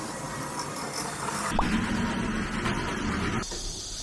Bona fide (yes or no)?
yes